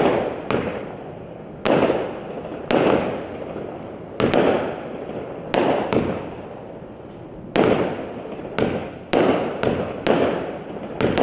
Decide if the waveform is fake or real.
real